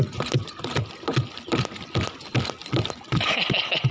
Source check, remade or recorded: recorded